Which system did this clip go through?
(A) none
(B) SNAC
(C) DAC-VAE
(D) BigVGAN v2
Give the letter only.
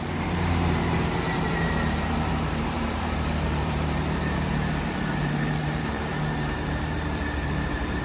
D